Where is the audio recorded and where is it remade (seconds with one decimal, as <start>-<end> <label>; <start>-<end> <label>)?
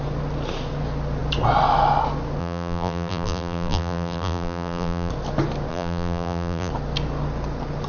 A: 0.0-2.4 recorded; 2.4-5.1 remade; 5.1-5.7 recorded; 5.7-6.7 remade; 6.7-7.9 recorded